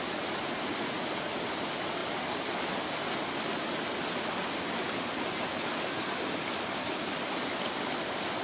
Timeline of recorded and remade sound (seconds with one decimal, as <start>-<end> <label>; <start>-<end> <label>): 0.0-8.4 recorded